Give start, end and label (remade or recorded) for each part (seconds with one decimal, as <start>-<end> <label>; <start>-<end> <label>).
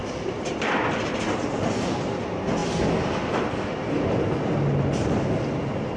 0.0-6.0 recorded